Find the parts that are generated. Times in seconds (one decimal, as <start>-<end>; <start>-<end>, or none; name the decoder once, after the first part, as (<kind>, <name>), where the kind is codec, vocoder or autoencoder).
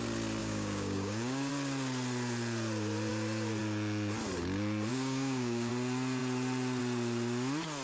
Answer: 0.4-1.5 (codec, DAC); 4.9-5.7